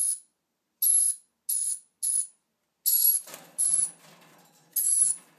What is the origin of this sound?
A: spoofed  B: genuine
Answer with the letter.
B